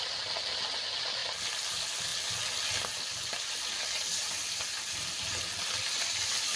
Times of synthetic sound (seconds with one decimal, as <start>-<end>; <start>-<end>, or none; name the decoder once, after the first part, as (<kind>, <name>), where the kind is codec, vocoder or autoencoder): none

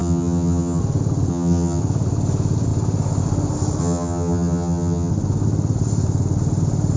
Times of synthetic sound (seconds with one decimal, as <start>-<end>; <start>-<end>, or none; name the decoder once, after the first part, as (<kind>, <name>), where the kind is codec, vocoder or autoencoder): 0.0-0.8 (vocoder, HiFi-GAN); 1.3-1.8; 3.8-5.1

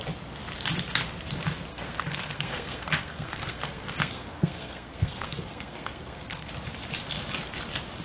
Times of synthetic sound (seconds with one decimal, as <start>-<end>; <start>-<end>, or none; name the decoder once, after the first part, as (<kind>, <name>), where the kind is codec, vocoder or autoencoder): 1.7-6.5 (codec, SNAC)

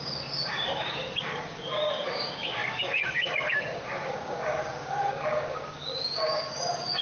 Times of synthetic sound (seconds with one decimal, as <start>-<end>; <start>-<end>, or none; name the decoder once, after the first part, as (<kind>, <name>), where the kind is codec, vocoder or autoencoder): 0.0-7.0 (codec, DAC)

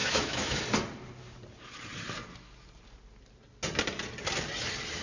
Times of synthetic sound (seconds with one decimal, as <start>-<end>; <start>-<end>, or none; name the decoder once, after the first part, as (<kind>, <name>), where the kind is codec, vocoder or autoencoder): 0.0-0.6 (autoencoder, DAC-VAE)

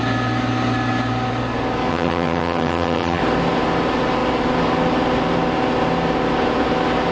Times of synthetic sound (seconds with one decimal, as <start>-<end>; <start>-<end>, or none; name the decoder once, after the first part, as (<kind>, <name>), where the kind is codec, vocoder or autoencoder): 1.9-3.2 (vocoder, HiFi-GAN)